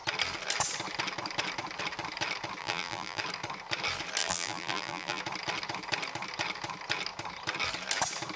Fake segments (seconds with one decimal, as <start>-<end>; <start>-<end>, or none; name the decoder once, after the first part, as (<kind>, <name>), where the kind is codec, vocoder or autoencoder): 2.6-3.2 (vocoder, BigVGAN v2); 4.2-5.2